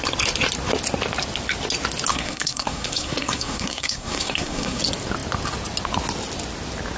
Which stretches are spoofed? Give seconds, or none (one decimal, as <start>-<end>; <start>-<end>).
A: 2.1-4.8

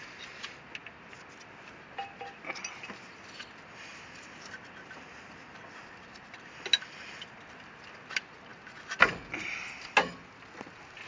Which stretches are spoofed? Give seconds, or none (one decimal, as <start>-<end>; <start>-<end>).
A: none

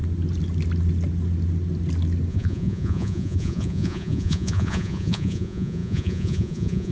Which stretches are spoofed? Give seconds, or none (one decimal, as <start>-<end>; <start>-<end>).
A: 2.3-6.9

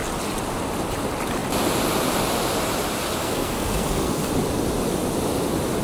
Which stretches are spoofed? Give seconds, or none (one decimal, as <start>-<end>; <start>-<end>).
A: 3.2-4.3

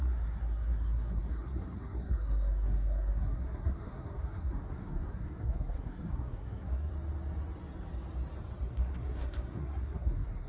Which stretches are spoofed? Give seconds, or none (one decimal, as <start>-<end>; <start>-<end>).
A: 0.0-6.9; 8.7-10.5

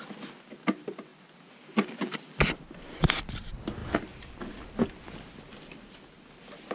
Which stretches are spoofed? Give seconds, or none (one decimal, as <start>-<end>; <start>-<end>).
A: none

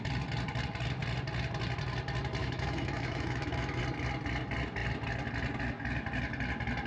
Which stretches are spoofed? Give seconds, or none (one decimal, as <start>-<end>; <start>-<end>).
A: 2.4-3.8